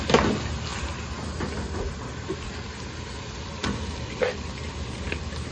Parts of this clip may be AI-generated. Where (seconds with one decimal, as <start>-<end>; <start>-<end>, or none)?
3.6-4.9